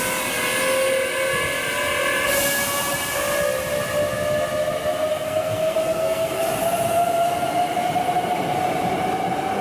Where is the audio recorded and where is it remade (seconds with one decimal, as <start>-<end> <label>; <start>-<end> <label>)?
0.0-5.1 recorded; 5.1-6.4 remade; 6.4-9.6 recorded